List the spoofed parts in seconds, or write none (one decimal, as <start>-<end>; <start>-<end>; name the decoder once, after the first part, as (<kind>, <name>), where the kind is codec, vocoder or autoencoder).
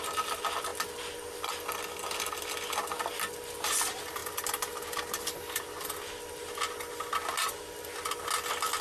none